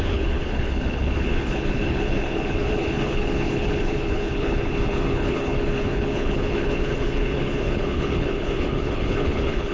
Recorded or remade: remade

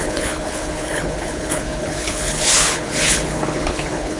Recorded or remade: remade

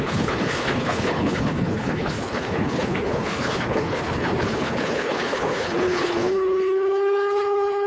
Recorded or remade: remade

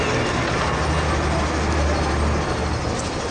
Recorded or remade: recorded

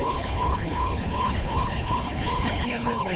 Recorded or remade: remade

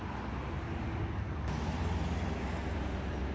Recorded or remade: recorded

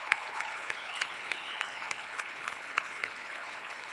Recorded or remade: remade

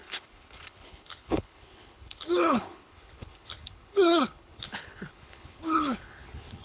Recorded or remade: remade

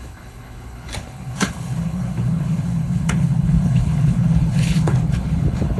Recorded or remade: remade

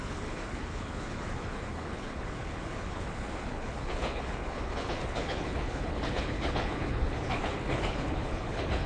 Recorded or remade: remade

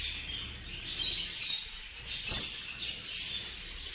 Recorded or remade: recorded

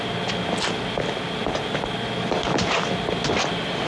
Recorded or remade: recorded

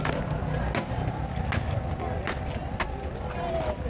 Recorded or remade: recorded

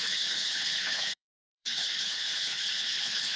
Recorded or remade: remade